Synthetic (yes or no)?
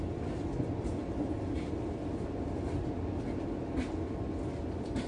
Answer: no